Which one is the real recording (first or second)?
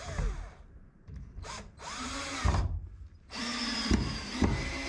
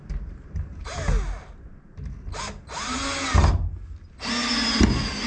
second